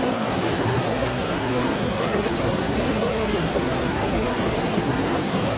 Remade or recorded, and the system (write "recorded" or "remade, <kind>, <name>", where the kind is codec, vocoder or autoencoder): remade, codec, SNAC